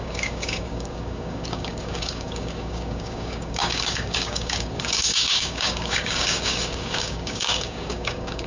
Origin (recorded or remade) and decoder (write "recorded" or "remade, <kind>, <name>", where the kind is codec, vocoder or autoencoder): remade, codec, DAC